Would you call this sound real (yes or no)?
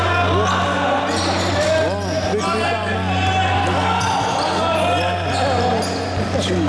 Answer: yes